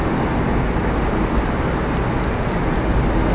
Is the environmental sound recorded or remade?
recorded